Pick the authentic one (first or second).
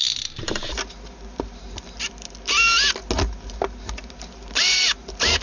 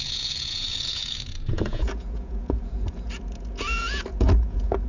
first